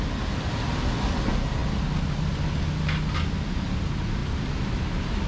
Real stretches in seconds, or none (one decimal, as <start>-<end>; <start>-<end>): 0.0-5.3